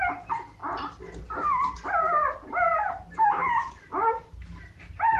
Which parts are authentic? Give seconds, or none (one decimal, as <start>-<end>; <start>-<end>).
0.0-5.2